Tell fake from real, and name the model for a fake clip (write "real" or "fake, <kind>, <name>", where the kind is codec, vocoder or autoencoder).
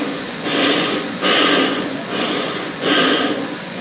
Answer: fake, vocoder, Vocos